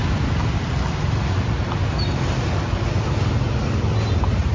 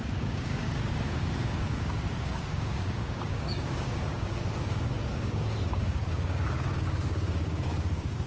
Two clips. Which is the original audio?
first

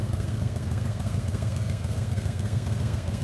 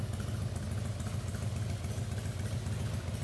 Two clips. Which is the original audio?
second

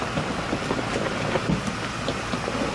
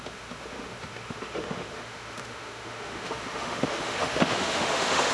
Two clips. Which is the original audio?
first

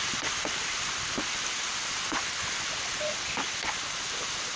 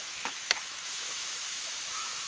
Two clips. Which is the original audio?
first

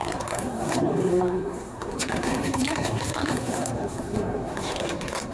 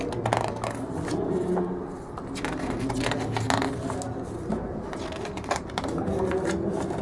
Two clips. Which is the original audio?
second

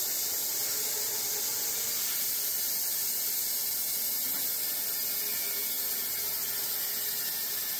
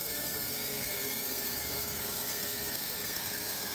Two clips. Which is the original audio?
first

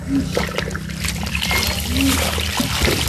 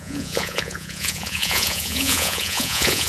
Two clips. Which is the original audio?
first